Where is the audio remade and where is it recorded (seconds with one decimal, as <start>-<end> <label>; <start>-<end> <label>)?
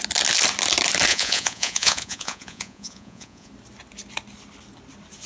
0.0-1.1 recorded; 1.1-3.5 remade; 3.5-5.3 recorded